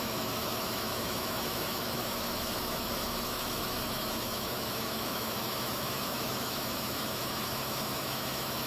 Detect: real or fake fake